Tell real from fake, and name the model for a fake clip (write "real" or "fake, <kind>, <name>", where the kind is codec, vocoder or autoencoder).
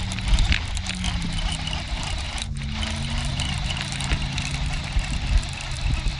real